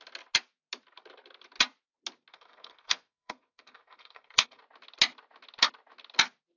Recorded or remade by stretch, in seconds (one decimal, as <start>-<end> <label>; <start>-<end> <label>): 0.0-2.3 recorded; 2.3-4.6 remade; 4.6-6.6 recorded